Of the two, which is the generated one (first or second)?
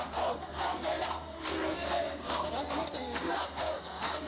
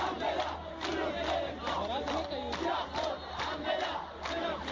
first